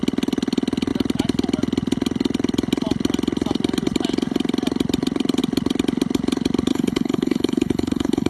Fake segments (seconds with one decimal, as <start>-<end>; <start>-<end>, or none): 6.7-8.3